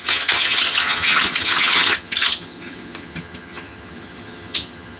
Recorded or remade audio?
remade